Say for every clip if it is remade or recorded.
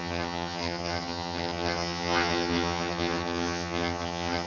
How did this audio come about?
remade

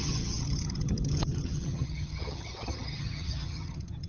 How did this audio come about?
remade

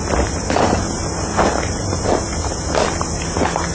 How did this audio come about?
recorded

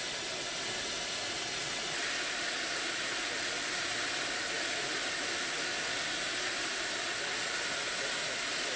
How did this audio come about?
recorded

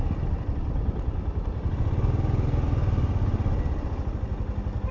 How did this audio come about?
recorded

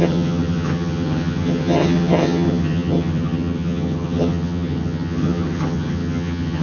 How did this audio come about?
remade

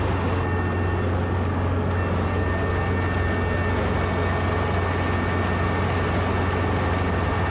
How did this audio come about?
recorded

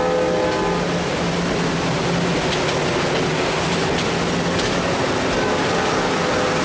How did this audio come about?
recorded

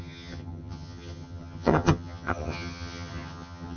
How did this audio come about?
remade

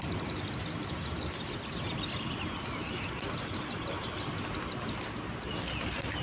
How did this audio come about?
recorded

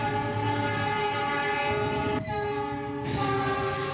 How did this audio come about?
recorded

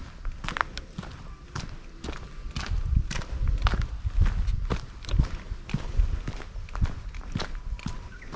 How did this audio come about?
recorded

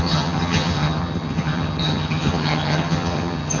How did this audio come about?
remade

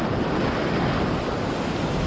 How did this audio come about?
recorded